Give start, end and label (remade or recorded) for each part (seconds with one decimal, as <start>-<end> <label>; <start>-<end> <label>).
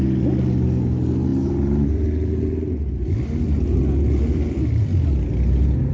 0.0-5.9 recorded